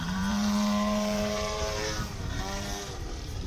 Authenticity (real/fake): fake